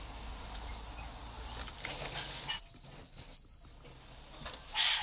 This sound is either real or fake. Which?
real